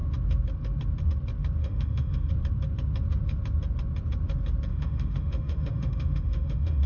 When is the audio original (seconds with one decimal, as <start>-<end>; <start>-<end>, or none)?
0.0-1.6; 2.3-4.7